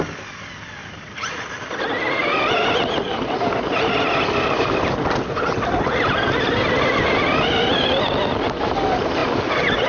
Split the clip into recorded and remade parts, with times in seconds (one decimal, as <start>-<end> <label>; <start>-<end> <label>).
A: 0.0-0.8 recorded; 0.8-1.4 remade; 1.4-2.2 recorded; 2.2-3.9 remade; 3.9-9.9 recorded